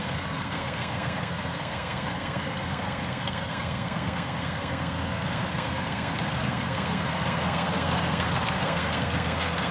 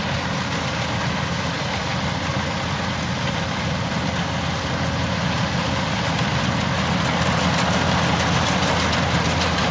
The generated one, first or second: first